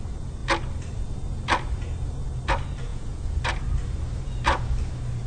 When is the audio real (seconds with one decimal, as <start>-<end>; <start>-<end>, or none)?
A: 0.0-2.9; 3.4-5.3